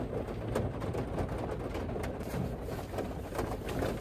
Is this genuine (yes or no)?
yes